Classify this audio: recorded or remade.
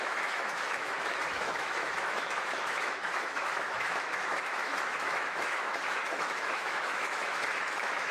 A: remade